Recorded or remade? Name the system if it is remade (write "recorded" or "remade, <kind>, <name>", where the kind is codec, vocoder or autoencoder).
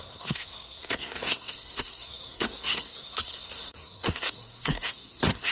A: remade, codec, SNAC